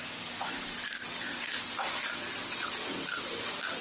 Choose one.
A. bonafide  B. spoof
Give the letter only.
A